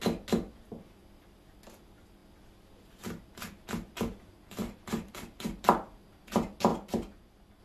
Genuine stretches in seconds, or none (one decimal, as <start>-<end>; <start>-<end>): 0.0-4.6; 6.0-7.6